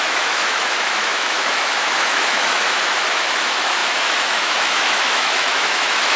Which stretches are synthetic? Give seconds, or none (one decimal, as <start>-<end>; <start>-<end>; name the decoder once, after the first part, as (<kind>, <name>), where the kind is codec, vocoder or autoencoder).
0.0-6.2 (autoencoder, DAC-VAE)